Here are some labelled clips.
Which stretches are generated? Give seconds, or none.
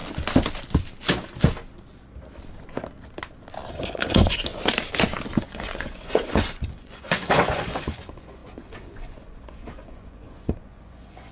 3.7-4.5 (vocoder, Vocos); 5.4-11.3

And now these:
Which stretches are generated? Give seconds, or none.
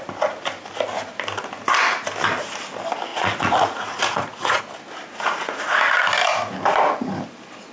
3.1-4.6 (vocoder, Vocos); 5.1-5.7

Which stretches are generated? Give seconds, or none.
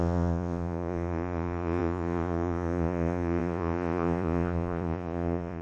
0.0-5.6 (vocoder, Vocos)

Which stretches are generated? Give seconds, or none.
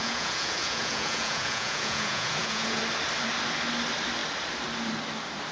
0.0-2.8 (vocoder, Vocos)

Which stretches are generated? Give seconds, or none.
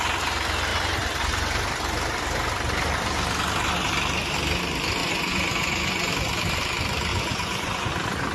5.0-6.1 (vocoder, Vocos); 7.1-7.9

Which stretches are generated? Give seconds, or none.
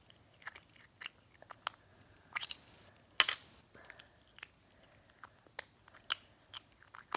1.9-2.5 (vocoder, Vocos)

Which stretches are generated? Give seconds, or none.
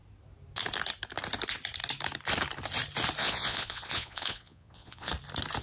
3.2-5.1 (vocoder, Vocos)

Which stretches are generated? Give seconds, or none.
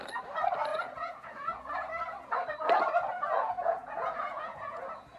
0.7-1.7 (vocoder, Vocos); 3.1-4.8